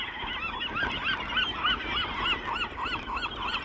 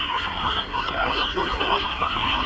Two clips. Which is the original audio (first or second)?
first